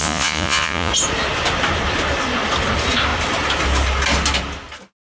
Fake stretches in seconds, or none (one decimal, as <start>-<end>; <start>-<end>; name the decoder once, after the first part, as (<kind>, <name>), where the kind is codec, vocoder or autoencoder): 0.0-0.9 (vocoder, Vocos)